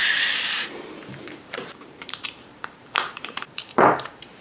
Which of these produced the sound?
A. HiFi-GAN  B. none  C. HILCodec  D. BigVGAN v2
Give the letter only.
D